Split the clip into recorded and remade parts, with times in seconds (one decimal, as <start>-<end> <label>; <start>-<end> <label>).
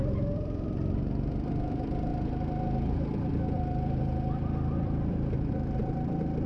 0.0-2.1 remade; 2.1-3.3 recorded; 3.3-6.5 remade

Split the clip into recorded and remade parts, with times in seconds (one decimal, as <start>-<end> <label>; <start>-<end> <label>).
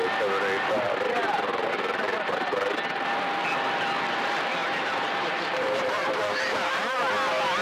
0.0-4.6 recorded; 4.6-7.0 remade; 7.0-7.6 recorded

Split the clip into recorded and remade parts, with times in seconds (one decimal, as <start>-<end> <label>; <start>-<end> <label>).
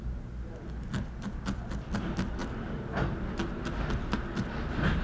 0.0-5.0 recorded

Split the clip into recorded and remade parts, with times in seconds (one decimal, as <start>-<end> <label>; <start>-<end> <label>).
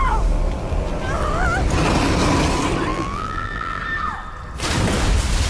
0.0-2.9 recorded; 2.9-3.8 remade; 3.8-5.5 recorded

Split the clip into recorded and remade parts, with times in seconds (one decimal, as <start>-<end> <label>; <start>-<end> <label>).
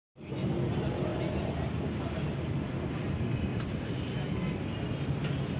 0.0-3.5 recorded; 3.5-4.9 remade; 4.9-5.6 recorded